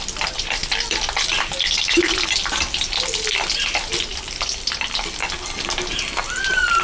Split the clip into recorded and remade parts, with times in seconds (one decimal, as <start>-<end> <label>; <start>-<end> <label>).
0.0-0.6 remade; 0.6-1.4 recorded; 1.4-4.1 remade; 4.1-6.2 recorded; 6.2-6.8 remade